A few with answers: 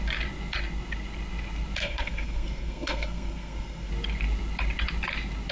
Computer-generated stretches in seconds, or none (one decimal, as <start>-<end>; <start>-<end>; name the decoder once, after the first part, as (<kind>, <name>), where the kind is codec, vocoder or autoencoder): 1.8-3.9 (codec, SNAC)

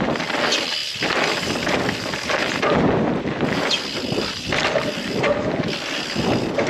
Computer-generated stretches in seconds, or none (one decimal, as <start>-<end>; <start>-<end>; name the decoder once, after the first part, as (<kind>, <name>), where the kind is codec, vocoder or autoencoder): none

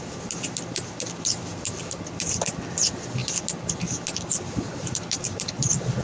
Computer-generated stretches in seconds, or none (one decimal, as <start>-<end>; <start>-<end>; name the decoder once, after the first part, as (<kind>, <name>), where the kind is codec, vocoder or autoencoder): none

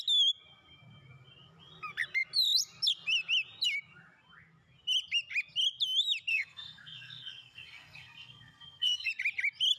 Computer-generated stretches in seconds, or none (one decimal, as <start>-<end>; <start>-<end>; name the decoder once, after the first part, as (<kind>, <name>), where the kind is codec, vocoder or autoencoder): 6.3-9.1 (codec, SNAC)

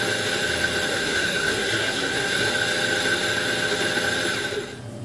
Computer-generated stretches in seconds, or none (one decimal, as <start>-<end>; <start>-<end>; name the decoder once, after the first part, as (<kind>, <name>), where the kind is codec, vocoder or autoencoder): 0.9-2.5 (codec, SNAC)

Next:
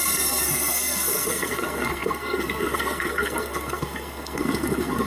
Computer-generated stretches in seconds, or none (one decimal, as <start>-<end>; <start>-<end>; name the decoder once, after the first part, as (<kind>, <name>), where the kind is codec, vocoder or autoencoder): 0.0-5.1 (codec, SNAC)

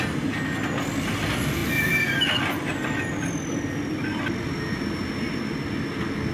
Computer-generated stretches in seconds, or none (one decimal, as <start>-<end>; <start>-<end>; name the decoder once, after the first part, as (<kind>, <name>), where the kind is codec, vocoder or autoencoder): none